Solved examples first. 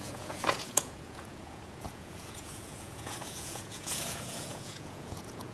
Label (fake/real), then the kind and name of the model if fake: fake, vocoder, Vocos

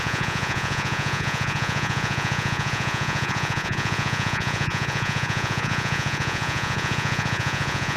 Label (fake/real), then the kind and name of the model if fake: fake, vocoder, Vocos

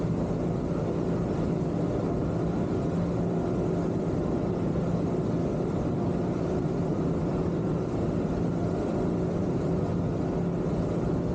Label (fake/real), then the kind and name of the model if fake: real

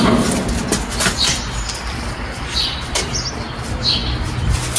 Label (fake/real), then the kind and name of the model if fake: real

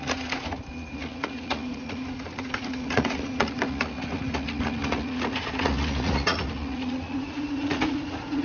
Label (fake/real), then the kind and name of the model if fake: fake, vocoder, Vocos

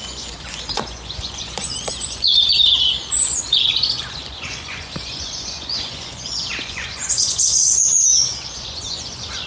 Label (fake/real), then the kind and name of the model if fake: fake, vocoder, Vocos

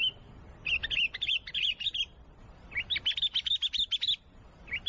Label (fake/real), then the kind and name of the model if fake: real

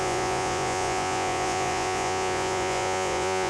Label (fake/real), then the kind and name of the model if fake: fake, vocoder, Vocos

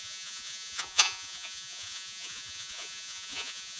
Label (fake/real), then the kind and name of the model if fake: fake, vocoder, Vocos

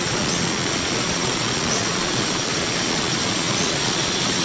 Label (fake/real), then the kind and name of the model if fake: fake, vocoder, Vocos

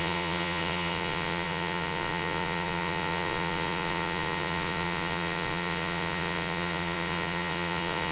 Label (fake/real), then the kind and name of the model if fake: fake, vocoder, Vocos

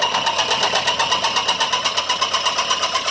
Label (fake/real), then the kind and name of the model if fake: real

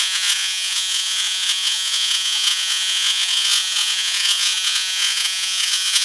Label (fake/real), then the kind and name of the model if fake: fake, vocoder, Vocos